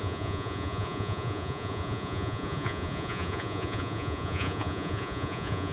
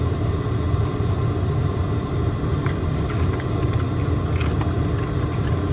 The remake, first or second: first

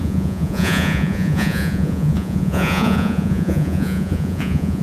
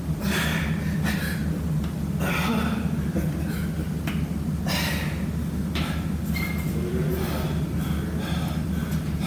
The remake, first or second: first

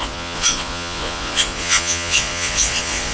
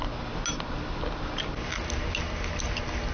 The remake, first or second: first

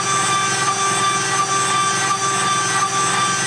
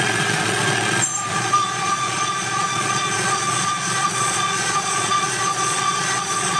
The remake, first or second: second